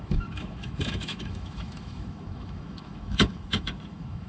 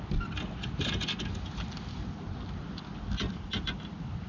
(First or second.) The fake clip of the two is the first